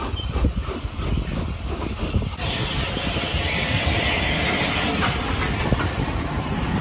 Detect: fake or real real